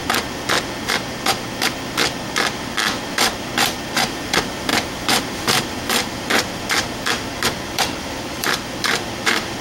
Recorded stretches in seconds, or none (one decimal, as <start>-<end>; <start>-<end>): 0.0-3.9

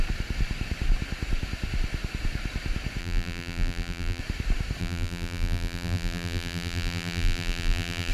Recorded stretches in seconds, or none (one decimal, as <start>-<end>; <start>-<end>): 0.0-3.0; 4.2-4.8

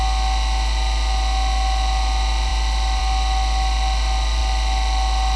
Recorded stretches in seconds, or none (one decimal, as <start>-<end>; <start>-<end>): 0.0-5.4

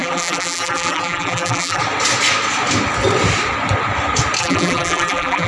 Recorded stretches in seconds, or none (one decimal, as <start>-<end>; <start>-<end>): 1.8-4.4

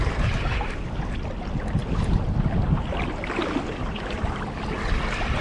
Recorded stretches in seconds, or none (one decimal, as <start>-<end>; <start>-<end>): 0.0-5.4